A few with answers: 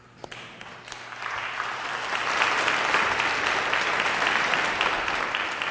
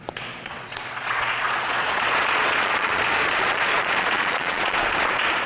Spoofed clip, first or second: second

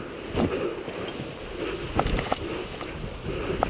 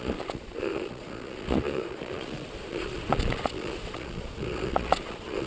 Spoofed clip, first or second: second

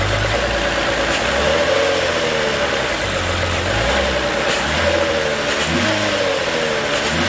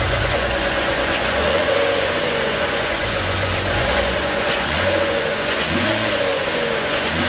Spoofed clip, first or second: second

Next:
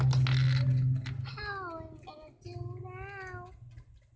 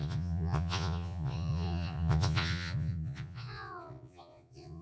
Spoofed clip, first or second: second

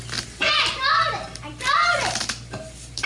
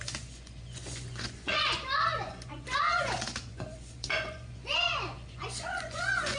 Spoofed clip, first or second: second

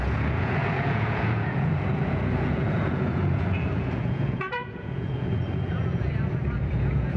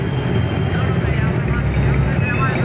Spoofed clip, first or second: first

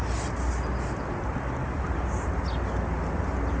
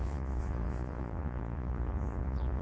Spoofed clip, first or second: second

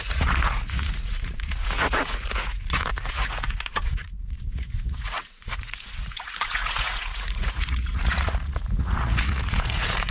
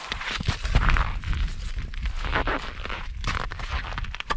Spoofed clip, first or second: first